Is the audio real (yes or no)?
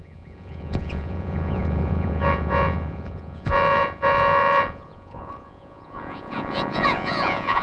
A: no